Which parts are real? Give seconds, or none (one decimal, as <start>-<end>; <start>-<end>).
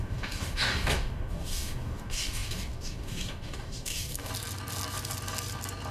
4.3-5.9